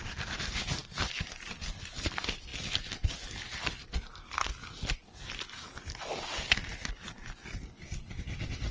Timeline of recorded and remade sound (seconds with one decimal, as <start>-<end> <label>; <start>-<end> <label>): 0.0-8.7 recorded